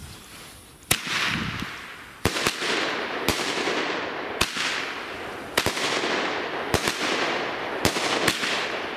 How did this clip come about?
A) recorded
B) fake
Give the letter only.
A